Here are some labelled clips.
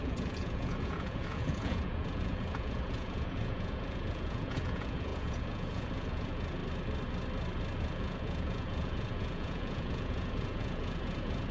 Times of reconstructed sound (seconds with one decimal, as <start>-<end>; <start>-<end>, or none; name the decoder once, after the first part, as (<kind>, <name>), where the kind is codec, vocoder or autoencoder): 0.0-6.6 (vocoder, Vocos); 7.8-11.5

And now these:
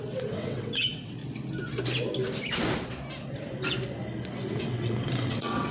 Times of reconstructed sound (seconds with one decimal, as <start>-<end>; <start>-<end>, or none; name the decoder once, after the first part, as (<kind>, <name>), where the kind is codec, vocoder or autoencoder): 0.0-1.2 (vocoder, WaveNeXt); 4.6-5.7

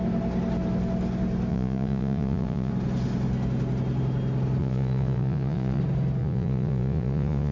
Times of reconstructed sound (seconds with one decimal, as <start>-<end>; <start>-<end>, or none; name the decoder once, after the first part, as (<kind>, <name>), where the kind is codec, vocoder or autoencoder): 1.5-2.7 (vocoder, Vocos); 4.6-5.8; 6.2-7.5

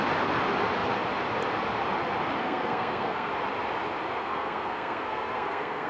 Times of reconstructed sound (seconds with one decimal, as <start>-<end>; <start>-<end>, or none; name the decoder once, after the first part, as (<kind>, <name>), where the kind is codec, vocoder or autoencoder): 2.4-3.3 (codec, SNAC); 4.2-5.9